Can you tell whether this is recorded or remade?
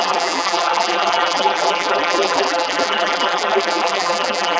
remade